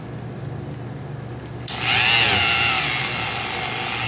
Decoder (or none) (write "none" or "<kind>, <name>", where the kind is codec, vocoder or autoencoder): none